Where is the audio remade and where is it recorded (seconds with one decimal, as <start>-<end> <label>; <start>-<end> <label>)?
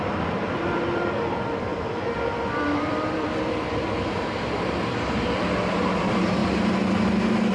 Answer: 0.0-6.4 remade; 6.4-7.5 recorded